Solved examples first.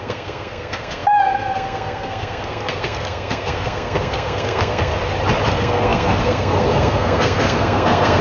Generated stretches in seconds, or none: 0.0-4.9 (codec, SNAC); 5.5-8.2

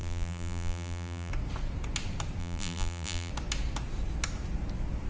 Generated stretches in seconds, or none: 0.0-1.3 (vocoder, BigVGAN v2); 2.4-3.3

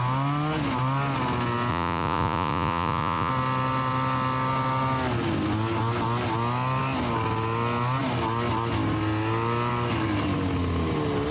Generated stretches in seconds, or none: 1.7-3.3 (vocoder, Vocos)

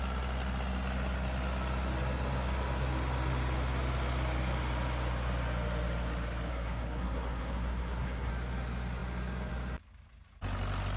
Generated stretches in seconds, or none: 6.5-8.3 (codec, SNAC)

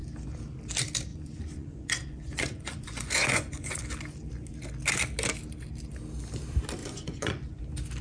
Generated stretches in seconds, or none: 1.1-3.8 (vocoder, Vocos); 6.8-7.6